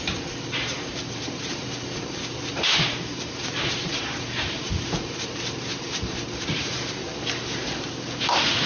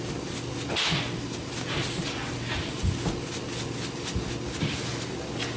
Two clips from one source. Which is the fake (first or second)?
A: first